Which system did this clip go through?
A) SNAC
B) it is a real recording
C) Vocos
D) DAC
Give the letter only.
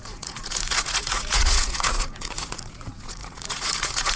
C